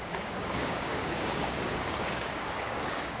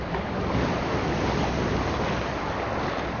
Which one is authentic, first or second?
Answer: second